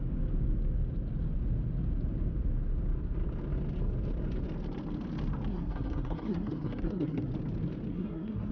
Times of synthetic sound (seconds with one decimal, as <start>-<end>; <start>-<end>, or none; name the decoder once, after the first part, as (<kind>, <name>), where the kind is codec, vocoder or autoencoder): 5.5-7.3 (codec, SNAC); 7.9-8.5